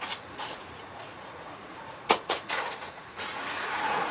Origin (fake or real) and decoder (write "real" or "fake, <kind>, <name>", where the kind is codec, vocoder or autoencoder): fake, vocoder, Vocos